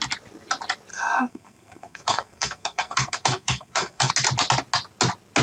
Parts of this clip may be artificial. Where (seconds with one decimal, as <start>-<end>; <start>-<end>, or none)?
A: 0.9-4.1